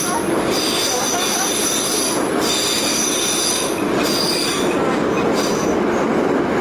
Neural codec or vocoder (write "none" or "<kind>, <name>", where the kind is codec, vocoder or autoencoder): none